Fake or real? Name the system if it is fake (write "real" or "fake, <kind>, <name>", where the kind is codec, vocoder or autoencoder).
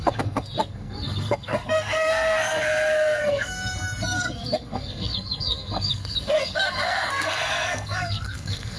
fake, codec, SNAC